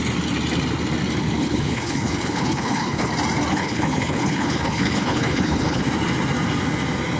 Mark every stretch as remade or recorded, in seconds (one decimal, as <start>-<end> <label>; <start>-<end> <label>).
0.0-1.4 recorded; 1.4-3.1 remade; 3.1-3.5 recorded; 3.5-5.8 remade; 5.8-7.2 recorded